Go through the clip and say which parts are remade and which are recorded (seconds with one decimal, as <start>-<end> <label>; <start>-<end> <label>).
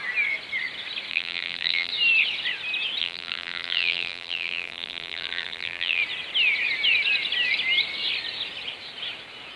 0.0-1.1 recorded; 1.1-1.9 remade; 1.9-3.0 recorded; 3.0-6.0 remade; 6.0-9.6 recorded